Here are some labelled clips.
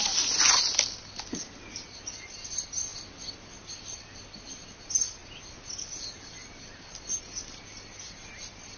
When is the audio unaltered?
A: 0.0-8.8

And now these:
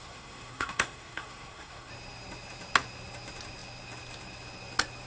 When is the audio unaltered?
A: 1.9-5.1

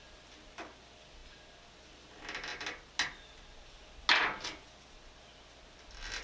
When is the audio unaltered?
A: 0.0-6.2

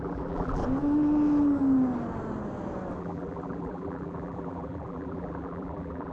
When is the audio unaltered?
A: 0.6-3.0

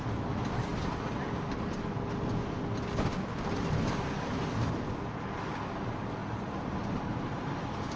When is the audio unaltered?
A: 0.0-6.2

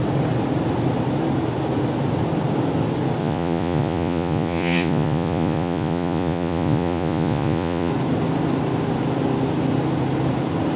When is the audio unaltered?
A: 0.0-3.2; 7.9-10.8